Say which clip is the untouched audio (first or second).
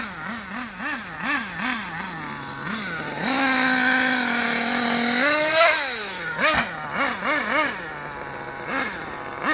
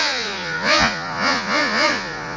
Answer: first